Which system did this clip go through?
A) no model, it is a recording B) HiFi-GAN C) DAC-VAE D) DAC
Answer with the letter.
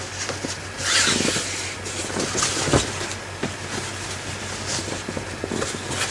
A